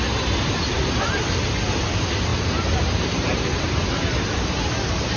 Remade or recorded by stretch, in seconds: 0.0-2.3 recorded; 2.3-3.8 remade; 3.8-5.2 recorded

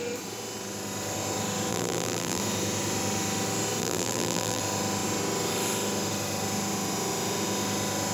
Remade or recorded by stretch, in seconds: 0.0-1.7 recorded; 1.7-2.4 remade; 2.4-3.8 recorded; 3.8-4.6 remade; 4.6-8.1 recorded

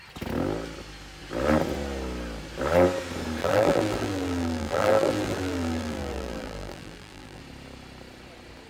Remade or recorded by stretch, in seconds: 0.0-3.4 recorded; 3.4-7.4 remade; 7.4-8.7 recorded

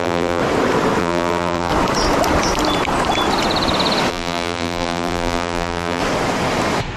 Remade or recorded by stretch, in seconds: 0.0-0.4 remade; 0.4-1.0 recorded; 1.0-1.7 remade; 1.7-4.1 recorded; 4.1-6.0 remade; 6.0-7.0 recorded

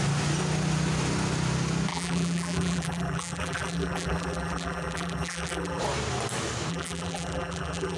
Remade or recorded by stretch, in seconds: 0.0-1.9 recorded; 1.9-5.8 remade; 5.8-6.7 recorded; 6.7-8.0 remade

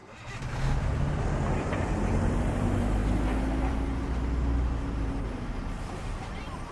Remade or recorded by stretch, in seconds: 0.0-3.0 remade; 3.0-6.0 recorded; 6.0-6.7 remade